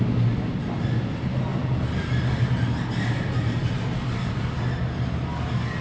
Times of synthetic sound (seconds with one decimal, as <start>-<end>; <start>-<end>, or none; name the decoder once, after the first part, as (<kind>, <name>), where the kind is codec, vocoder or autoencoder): none